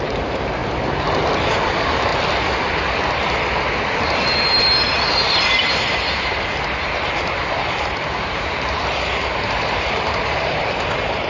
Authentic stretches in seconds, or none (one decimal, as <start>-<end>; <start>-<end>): 0.6-1.5; 2.1-5.7